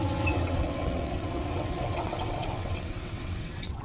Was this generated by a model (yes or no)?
yes